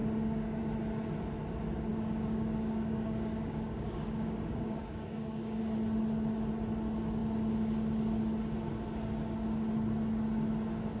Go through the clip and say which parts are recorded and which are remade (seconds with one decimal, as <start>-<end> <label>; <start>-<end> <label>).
0.0-0.6 remade; 0.6-1.9 recorded; 1.9-5.6 remade; 5.6-11.0 recorded